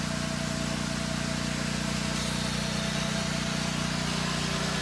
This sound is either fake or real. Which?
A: real